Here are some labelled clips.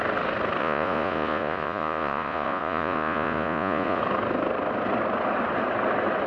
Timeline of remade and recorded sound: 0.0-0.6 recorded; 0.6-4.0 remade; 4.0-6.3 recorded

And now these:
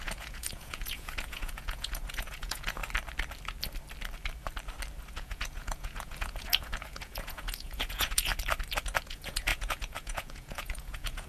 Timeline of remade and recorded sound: 0.0-2.8 remade; 2.8-5.1 recorded; 5.1-8.3 remade; 8.3-9.1 recorded; 9.1-11.3 remade